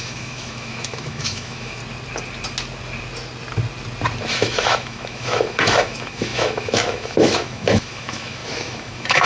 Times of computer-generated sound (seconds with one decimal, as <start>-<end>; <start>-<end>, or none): 0.0-1.8; 4.3-9.3